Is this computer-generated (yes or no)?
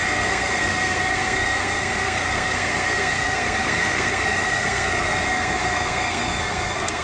yes